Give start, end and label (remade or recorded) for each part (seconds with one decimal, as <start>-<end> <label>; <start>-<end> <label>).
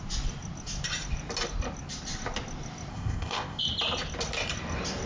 0.0-2.9 recorded; 2.9-3.6 remade; 3.6-5.1 recorded